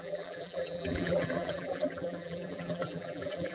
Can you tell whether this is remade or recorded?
remade